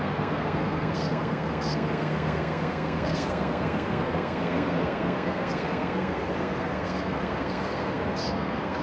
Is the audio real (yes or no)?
no